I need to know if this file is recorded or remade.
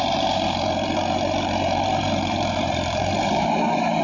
remade